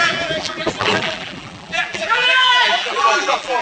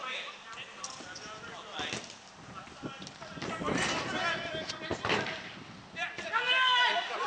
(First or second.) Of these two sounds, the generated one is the first